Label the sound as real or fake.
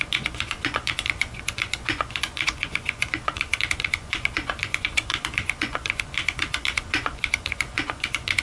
fake